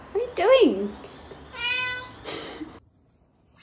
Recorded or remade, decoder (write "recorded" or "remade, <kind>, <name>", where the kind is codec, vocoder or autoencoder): recorded